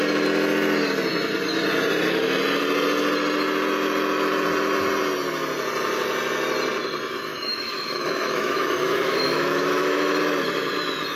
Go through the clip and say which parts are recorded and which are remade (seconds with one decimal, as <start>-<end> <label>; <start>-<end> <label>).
0.0-7.3 recorded; 7.3-10.2 remade; 10.2-11.2 recorded